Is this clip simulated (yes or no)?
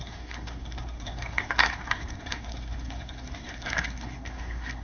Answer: yes